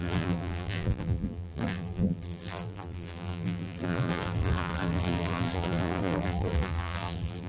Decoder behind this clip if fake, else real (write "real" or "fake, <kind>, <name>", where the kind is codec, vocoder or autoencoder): fake, vocoder, BigVGAN v2